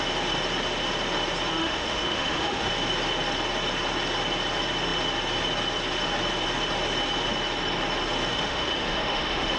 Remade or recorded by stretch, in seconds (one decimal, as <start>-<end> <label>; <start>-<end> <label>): 0.0-1.6 recorded; 1.6-2.7 remade; 2.7-8.3 recorded; 8.3-9.6 remade